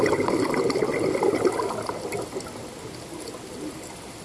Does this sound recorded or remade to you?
recorded